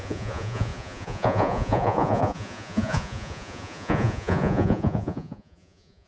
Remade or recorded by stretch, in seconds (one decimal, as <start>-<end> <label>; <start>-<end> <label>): 0.0-6.1 remade